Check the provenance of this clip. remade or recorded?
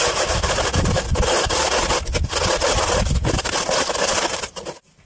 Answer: recorded